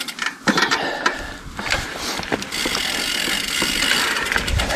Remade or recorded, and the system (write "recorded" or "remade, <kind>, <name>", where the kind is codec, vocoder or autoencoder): remade, vocoder, BigVGAN v2